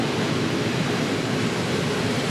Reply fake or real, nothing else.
real